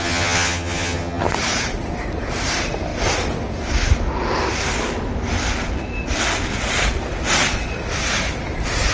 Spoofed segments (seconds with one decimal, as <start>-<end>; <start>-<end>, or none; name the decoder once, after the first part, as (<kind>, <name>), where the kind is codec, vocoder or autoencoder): 0.0-1.3 (vocoder, HiFi-GAN)